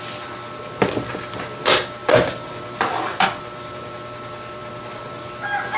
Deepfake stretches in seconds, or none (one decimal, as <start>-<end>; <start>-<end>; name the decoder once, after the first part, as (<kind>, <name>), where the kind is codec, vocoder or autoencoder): 2.0-3.9 (vocoder, BigVGAN v2)

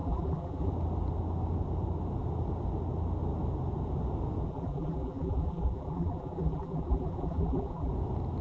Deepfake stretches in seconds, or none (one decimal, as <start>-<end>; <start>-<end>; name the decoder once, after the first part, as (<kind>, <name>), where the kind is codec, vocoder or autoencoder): 0.0-0.7 (vocoder, BigVGAN v2); 4.5-7.9

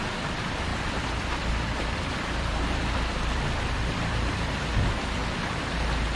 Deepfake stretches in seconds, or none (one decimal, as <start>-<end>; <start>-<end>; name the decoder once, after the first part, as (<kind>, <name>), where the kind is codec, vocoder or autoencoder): 0.0-5.2 (vocoder, BigVGAN v2); 5.7-6.2